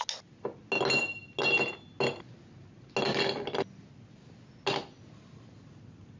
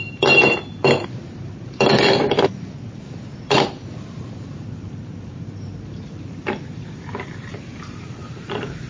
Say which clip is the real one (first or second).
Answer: first